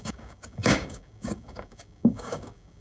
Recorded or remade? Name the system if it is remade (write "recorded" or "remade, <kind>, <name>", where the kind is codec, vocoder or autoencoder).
remade, codec, DAC